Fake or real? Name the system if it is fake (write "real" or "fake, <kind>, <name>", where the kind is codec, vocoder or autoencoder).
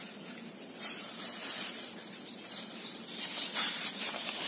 fake, vocoder, BigVGAN v2